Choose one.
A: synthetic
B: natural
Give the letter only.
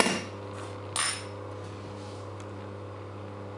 B